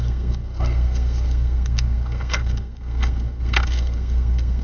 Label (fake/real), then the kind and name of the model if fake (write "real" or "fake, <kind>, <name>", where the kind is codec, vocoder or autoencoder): fake, codec, SNAC